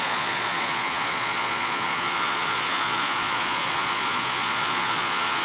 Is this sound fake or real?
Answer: fake